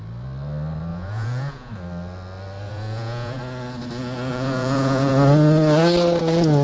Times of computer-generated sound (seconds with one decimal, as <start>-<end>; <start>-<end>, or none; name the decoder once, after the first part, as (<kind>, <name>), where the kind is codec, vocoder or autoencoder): 0.9-1.7 (vocoder, Vocos); 2.7-3.4; 4.3-5.1